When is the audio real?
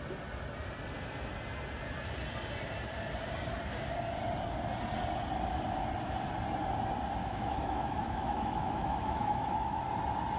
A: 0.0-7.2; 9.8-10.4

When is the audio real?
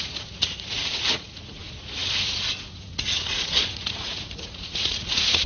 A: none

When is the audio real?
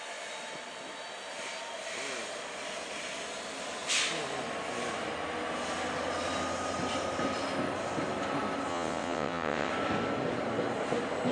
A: 0.0-8.7; 9.7-11.3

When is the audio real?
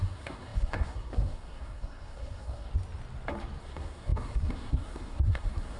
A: 2.7-3.6